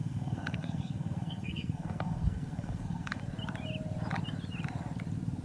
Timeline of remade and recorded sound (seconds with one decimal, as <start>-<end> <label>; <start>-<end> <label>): 0.0-3.2 remade; 3.2-5.4 recorded